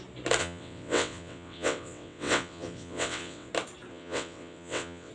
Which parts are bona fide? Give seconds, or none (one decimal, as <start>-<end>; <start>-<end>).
0.0-0.4; 3.5-3.9